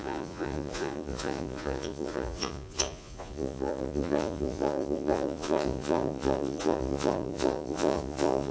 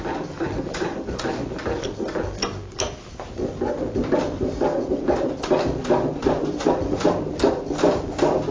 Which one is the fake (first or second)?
first